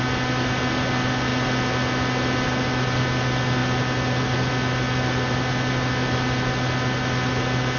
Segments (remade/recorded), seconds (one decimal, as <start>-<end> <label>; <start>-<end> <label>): 0.0-7.8 recorded